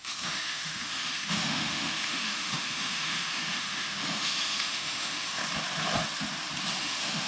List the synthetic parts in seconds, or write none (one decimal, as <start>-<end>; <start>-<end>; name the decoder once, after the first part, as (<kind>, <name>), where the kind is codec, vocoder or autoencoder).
0.0-5.4 (autoencoder, DAC-VAE); 6.8-7.3